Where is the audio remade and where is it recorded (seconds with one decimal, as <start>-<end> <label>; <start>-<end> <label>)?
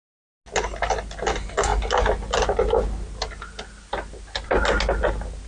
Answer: 0.0-5.5 recorded